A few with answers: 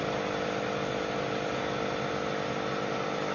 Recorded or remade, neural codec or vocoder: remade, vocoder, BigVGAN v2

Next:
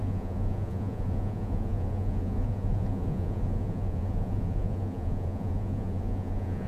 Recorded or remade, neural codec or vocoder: remade, vocoder, Vocos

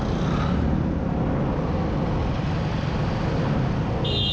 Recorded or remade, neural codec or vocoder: recorded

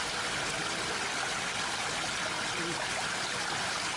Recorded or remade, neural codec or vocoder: recorded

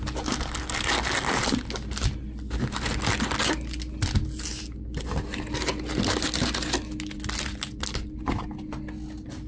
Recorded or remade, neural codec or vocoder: recorded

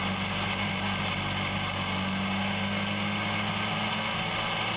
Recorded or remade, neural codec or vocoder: recorded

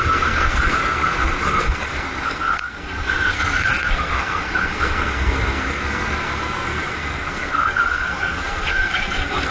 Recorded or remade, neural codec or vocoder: remade, codec, SNAC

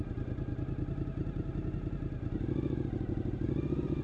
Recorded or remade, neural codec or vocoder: recorded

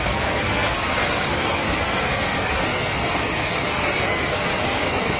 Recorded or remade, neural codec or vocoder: remade, codec, SNAC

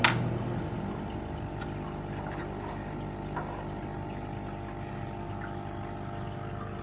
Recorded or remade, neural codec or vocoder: recorded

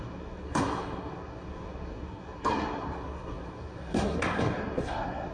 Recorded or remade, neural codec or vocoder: remade, codec, SNAC